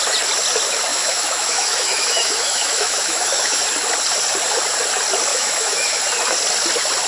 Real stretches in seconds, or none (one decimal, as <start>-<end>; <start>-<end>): 0.0-0.9; 3.6-5.3; 6.0-7.1